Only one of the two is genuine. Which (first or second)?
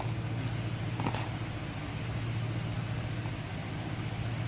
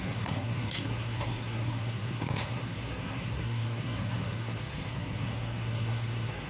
first